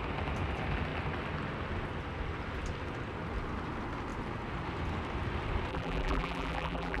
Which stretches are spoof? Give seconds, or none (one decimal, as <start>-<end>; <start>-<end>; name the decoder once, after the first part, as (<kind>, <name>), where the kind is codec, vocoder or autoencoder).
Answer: 5.7-7.0 (vocoder, BigVGAN v2)